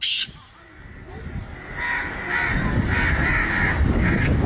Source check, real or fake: real